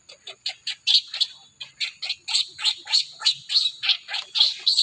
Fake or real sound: real